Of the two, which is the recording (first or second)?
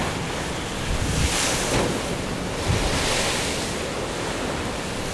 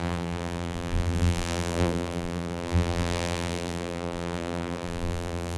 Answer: first